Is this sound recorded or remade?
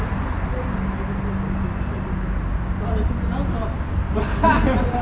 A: recorded